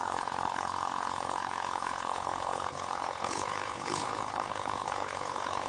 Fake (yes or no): yes